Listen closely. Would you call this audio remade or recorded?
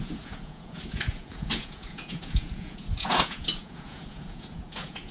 remade